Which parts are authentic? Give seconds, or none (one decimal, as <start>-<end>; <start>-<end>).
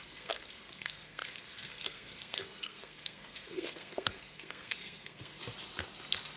5.4-6.4